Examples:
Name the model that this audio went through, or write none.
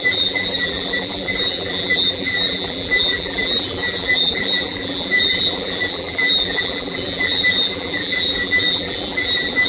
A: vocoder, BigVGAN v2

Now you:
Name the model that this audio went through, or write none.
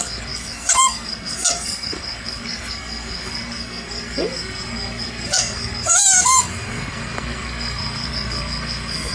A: codec, SNAC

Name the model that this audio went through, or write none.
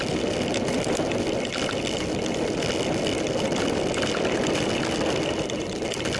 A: none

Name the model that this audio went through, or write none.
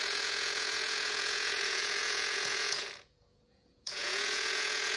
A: vocoder, Vocos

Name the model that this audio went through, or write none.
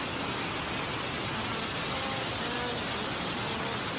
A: none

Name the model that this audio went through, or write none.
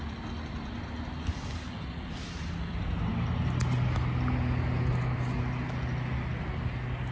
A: none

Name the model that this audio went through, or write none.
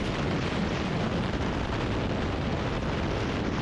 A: none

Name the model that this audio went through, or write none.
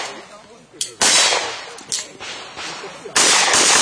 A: none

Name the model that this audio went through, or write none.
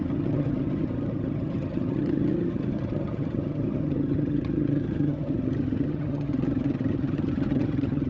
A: vocoder, HiFi-GAN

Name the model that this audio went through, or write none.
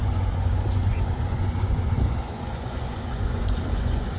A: vocoder, Vocos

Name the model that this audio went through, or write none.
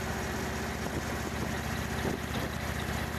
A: none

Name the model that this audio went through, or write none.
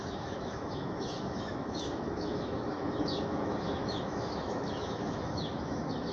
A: autoencoder, DAC-VAE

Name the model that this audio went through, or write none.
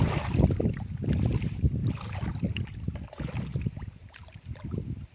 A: vocoder, BigVGAN v2